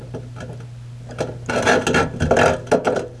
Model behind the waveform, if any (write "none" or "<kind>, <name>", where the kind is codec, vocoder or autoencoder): none